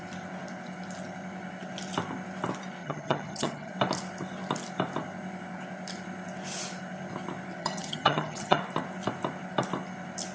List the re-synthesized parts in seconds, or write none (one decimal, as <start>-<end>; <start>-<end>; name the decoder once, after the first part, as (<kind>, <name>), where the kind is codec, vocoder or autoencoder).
2.8-3.7 (vocoder, HiFi-GAN); 7.6-8.6